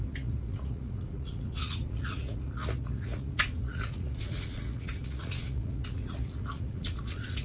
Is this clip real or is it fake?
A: fake